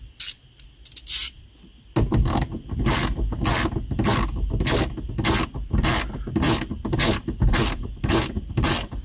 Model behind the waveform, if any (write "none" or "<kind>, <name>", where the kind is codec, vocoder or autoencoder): none